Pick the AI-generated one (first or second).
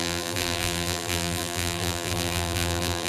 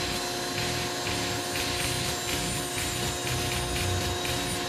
first